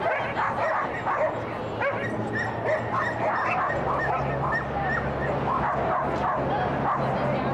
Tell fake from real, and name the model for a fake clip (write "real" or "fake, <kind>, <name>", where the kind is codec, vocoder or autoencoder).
real